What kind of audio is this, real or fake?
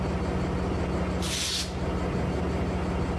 real